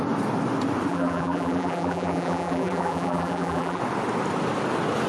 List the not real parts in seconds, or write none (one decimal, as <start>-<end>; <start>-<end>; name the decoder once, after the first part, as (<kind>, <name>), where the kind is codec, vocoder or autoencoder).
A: 0.9-3.8 (vocoder, BigVGAN v2)